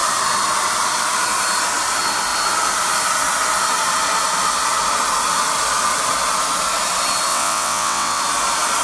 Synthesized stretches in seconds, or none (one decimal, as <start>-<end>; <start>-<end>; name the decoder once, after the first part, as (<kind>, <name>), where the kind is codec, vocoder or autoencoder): 7.3-8.2 (vocoder, WaveNeXt)